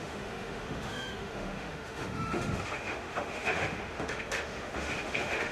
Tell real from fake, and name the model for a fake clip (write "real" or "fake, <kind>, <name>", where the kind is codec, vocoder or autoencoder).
fake, autoencoder, DAC-VAE